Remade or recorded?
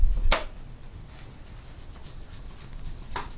recorded